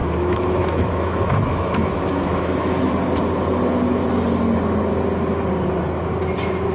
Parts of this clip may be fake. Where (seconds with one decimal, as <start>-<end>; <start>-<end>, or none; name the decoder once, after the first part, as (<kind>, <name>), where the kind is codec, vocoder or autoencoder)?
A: 0.0-2.9 (autoencoder, DAC-VAE)